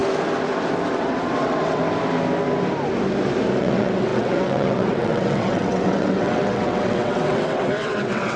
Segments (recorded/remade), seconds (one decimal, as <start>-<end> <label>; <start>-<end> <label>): 0.0-0.9 recorded; 0.9-1.8 remade; 1.8-3.6 recorded; 3.6-8.4 remade